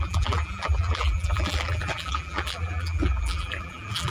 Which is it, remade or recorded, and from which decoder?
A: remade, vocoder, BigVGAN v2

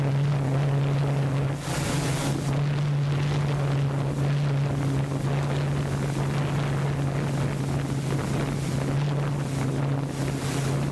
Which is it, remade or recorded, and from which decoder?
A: recorded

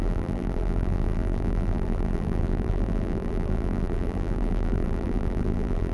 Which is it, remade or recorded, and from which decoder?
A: remade, vocoder, BigVGAN v2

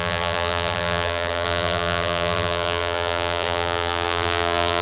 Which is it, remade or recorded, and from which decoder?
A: remade, vocoder, BigVGAN v2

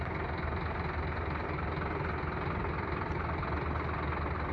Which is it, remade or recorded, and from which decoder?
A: recorded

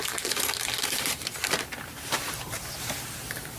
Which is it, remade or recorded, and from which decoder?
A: remade, vocoder, BigVGAN v2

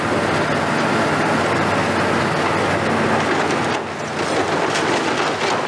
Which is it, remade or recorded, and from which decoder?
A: recorded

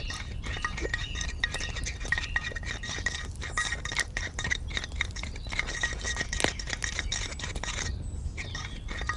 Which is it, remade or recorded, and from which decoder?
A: recorded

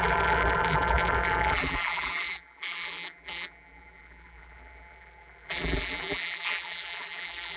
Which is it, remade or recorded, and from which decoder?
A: remade, vocoder, BigVGAN v2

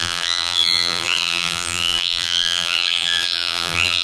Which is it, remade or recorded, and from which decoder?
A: remade, vocoder, BigVGAN v2